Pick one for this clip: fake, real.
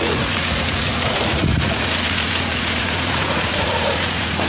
fake